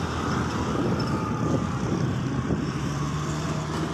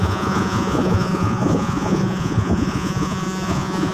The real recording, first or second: first